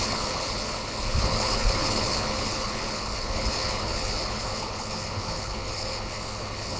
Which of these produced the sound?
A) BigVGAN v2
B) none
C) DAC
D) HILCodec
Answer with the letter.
D